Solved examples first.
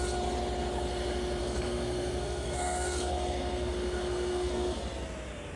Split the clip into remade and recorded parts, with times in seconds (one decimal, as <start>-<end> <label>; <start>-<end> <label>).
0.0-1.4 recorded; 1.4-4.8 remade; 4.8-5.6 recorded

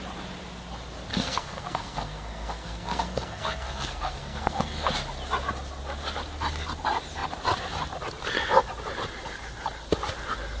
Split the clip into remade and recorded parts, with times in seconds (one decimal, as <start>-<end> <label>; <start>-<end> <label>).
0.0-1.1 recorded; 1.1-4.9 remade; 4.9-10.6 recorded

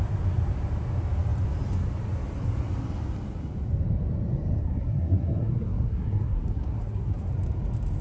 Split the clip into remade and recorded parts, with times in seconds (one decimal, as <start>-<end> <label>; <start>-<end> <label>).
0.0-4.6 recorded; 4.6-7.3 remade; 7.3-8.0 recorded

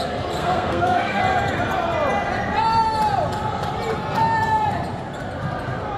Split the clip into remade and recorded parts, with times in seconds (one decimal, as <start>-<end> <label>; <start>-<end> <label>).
0.0-0.4 recorded; 0.4-1.2 remade; 1.2-6.0 recorded